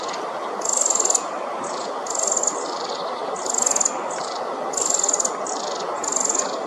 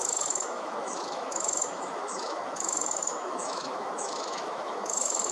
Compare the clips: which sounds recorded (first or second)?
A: first